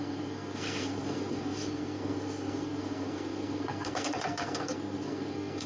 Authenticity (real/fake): fake